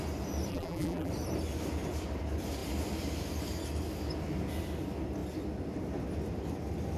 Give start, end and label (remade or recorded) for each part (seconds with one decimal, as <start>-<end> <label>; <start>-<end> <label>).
0.0-0.5 recorded; 0.5-1.1 remade; 1.1-7.0 recorded